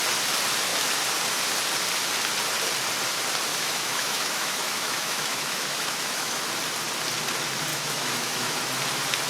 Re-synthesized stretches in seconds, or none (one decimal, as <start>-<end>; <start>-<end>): 3.5-6.4; 7.7-8.6

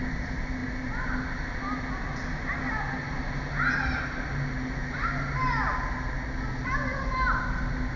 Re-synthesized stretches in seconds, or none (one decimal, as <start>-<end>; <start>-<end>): none

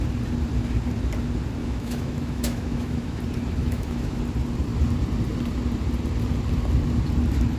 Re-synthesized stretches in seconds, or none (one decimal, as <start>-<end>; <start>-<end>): 1.6-3.2; 3.6-4.2